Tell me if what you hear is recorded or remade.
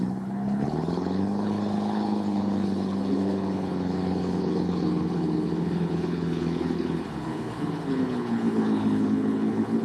remade